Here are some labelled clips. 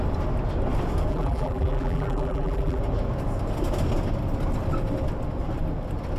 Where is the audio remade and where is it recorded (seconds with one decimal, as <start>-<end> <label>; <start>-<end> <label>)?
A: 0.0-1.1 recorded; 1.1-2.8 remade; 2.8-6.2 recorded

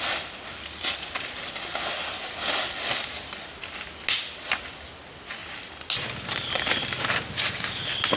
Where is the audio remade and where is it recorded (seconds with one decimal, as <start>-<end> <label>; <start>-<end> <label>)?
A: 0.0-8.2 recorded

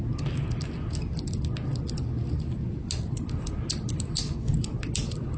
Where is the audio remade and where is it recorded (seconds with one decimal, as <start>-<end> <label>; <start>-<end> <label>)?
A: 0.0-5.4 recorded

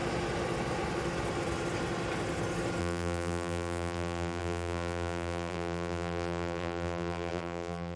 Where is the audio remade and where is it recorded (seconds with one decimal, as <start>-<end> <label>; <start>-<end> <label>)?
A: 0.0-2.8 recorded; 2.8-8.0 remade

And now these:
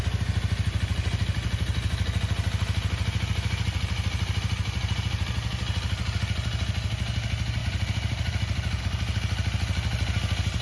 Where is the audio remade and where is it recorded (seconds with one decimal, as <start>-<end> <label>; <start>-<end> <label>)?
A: 0.0-7.6 recorded; 7.6-8.8 remade; 8.8-10.6 recorded

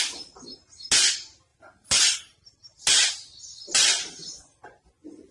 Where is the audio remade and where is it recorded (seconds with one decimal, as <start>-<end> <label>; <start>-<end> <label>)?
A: 0.0-1.5 recorded; 1.5-2.8 remade; 2.8-5.3 recorded

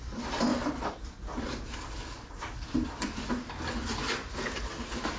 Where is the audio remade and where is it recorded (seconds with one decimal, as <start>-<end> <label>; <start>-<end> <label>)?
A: 0.0-0.5 recorded; 0.5-3.3 remade; 3.3-5.2 recorded

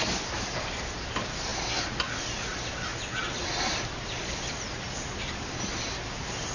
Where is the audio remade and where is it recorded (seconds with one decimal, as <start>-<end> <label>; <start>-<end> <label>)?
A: 0.0-6.5 recorded